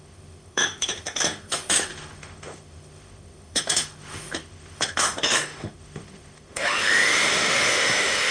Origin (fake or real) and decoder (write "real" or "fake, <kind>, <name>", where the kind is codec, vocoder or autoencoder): fake, autoencoder, DAC-VAE